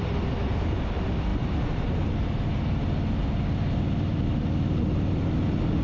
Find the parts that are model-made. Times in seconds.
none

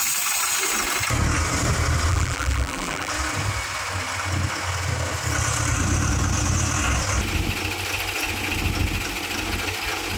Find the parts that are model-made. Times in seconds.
2.1-3.1 (vocoder, BigVGAN v2)

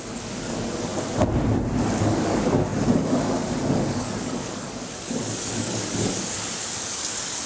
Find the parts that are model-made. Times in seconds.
0.0-0.9 (codec, DAC); 2.0-7.5

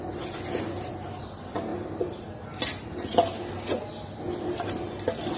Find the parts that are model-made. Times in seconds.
none

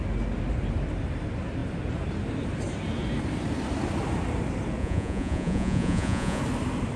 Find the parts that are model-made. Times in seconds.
4.8-6.4 (vocoder, Vocos)

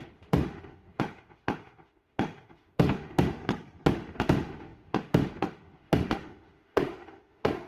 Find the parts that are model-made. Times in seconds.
0.0-3.4 (autoencoder, DAC-VAE); 3.9-7.7

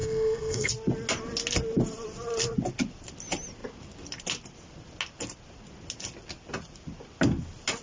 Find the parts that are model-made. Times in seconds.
0.0-0.7 (codec, SNAC)